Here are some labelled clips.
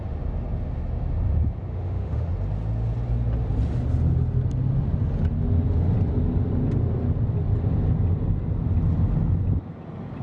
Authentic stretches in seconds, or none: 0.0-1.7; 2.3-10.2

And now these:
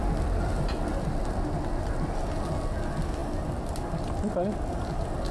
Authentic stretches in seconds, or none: 0.8-5.3

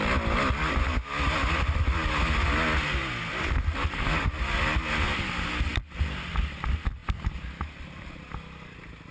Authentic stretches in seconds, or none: 0.0-9.1

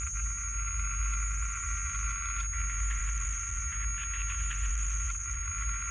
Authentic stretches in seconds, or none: 0.0-3.0; 3.6-4.7; 5.5-5.9